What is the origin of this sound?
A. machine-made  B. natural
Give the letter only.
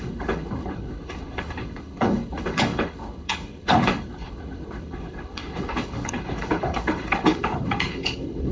A